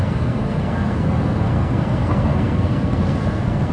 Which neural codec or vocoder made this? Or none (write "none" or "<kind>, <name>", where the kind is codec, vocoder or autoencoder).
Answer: codec, SNAC